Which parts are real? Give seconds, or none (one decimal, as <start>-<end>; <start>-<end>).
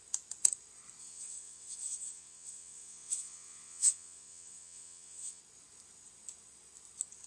0.0-1.0; 5.4-7.3